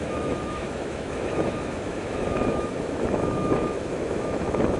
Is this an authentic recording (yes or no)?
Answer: no